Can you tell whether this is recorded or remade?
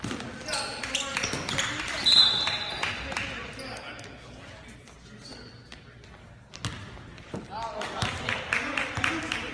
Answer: recorded